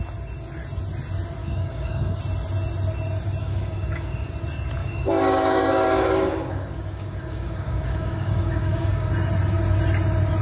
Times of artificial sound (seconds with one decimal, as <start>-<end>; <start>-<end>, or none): 1.4-2.2; 3.4-4.3; 4.8-9.1